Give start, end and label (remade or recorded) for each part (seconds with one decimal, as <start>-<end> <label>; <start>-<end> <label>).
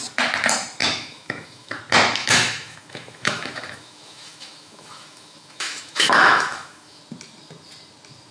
0.0-0.8 recorded; 0.8-1.8 remade; 1.8-2.2 recorded; 2.2-7.0 remade; 7.0-8.3 recorded